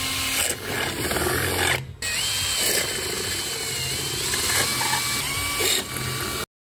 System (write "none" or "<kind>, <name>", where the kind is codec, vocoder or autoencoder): none